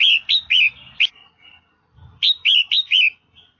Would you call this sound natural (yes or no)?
yes